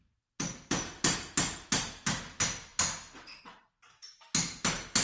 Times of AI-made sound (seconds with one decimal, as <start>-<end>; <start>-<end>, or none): none